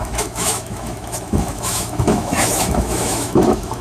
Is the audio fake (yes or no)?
yes